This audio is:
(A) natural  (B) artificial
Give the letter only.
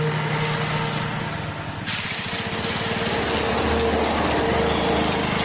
A